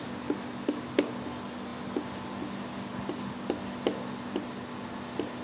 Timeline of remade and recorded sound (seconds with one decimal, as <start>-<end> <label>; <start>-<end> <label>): 0.0-5.4 recorded